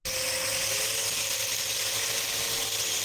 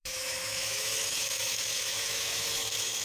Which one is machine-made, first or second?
second